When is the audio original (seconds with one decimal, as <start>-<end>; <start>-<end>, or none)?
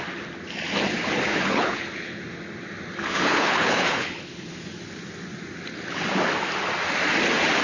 0.0-1.3; 2.2-3.0; 4.5-7.6